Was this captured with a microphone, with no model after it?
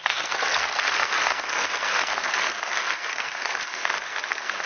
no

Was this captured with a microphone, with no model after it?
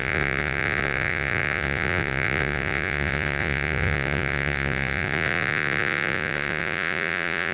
no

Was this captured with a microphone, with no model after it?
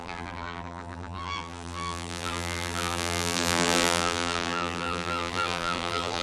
no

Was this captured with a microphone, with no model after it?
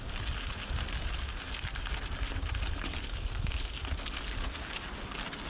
yes